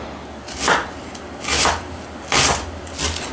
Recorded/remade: recorded